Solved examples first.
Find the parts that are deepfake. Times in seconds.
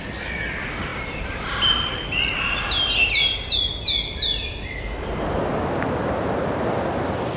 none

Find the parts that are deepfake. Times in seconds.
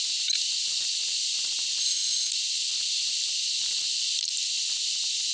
1.8-2.3 (codec, ZipCodec)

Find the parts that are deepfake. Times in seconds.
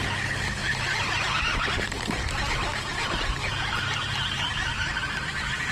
0.6-4.0 (vocoder, BigVGAN v2)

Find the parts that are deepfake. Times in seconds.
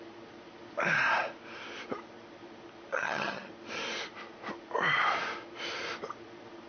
2.9-3.5 (vocoder, HiFi-GAN)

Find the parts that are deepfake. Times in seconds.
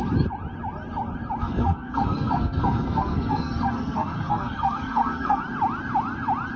1.4-5.4 (codec, SNAC)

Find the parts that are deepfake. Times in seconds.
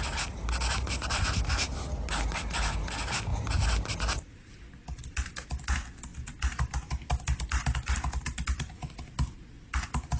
none